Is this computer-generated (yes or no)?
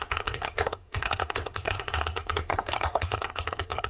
yes